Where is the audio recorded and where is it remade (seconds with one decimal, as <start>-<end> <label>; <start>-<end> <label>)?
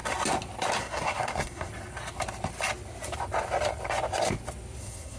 0.0-0.8 recorded; 0.8-1.7 remade; 1.7-4.8 recorded; 4.8-5.2 remade